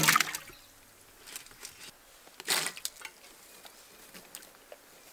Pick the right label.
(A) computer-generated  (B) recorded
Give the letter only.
B